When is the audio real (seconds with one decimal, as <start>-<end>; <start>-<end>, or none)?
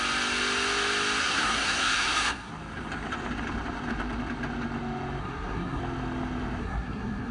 0.0-1.2; 2.5-5.2; 5.8-6.6